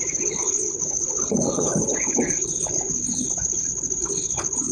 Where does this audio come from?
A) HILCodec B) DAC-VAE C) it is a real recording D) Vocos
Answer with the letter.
A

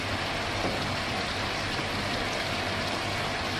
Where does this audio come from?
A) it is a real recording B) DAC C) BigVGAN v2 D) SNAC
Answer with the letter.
A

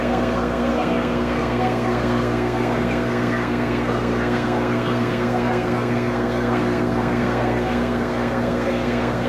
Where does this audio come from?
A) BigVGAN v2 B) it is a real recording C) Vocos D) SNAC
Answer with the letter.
D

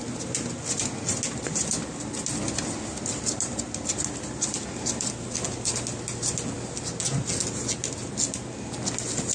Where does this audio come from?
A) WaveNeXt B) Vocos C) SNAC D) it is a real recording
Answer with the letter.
D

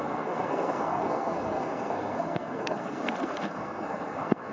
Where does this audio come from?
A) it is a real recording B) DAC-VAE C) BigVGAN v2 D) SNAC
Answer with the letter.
D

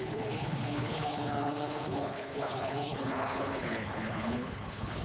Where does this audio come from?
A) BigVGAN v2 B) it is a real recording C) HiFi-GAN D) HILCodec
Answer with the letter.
D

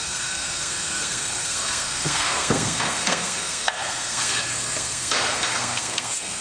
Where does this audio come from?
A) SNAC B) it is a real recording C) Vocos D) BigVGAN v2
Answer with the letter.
A